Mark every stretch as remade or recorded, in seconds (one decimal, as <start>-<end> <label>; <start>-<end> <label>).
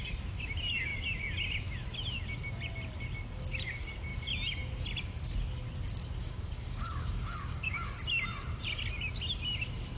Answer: 0.0-6.2 recorded; 6.2-7.9 remade; 7.9-10.0 recorded